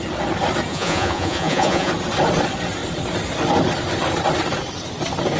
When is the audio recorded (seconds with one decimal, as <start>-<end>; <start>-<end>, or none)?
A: 0.0-0.7; 1.9-5.4